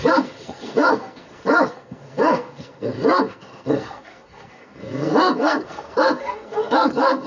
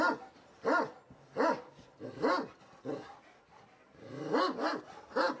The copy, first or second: first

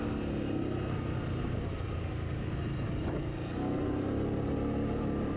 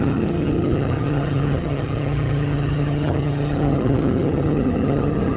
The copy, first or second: second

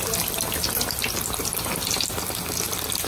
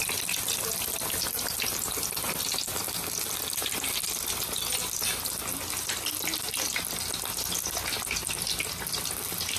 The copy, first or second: first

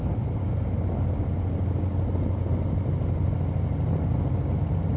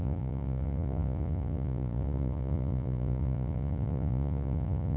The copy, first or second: second